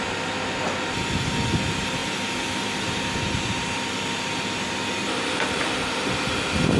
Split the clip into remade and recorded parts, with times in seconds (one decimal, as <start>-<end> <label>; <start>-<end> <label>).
0.0-6.8 recorded